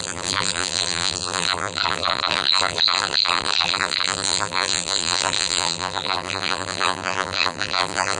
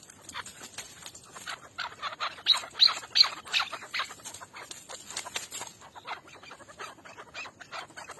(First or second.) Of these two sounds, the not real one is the first